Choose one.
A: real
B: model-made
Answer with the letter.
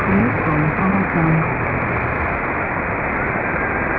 A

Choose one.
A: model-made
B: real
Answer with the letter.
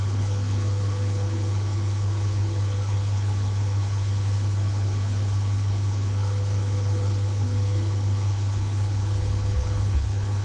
A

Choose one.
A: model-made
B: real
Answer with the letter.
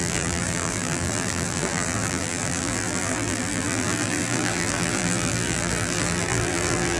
A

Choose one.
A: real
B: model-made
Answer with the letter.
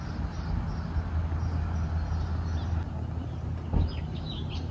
A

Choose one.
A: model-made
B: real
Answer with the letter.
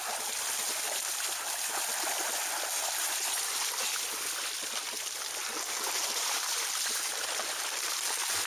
A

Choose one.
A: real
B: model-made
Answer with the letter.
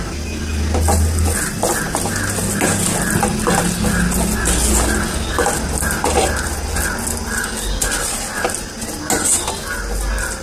A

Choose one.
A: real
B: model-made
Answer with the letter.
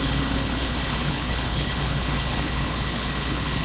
B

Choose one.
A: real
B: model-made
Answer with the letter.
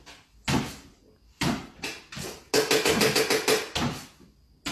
A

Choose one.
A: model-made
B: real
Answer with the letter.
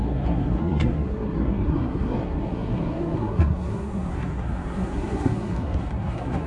A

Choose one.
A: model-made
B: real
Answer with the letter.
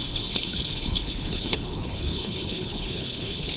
A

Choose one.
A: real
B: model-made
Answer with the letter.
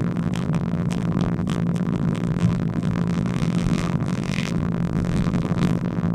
B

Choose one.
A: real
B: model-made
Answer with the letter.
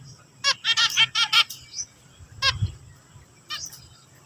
A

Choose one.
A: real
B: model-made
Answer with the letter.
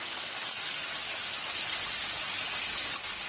A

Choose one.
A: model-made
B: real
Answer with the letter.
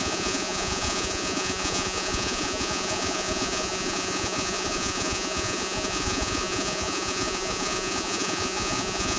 A